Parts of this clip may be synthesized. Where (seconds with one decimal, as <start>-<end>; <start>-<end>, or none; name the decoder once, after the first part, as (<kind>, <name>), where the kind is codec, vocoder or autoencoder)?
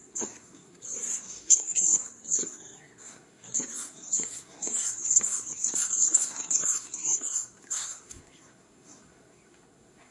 0.0-10.1 (codec, SNAC)